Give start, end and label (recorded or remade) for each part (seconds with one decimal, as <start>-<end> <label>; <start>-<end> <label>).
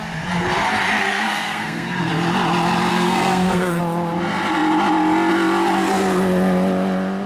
0.0-1.0 recorded; 1.0-2.1 remade; 2.1-2.9 recorded; 2.9-3.8 remade; 3.8-7.3 recorded